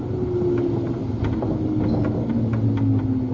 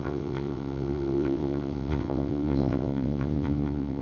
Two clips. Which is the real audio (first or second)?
first